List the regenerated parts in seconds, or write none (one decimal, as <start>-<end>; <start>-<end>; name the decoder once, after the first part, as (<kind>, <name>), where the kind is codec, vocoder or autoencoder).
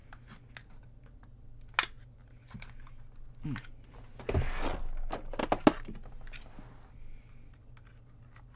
none